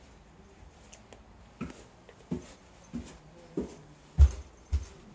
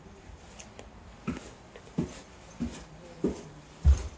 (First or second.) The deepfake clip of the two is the second